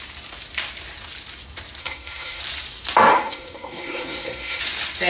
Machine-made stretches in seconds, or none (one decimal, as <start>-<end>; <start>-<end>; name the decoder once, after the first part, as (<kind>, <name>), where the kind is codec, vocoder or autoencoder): 1.8-2.4 (codec, SNAC); 3.1-4.6